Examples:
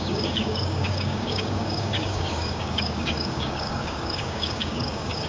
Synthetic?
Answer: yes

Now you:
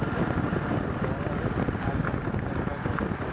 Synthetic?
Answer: no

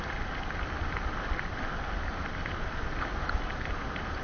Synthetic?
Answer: no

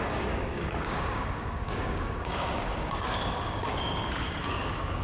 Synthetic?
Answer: yes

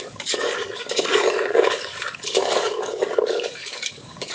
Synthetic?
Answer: yes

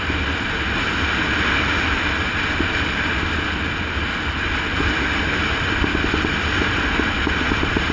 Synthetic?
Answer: no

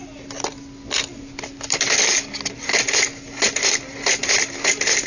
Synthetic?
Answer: no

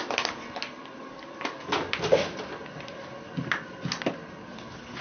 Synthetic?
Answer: no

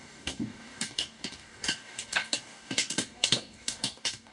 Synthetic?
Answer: yes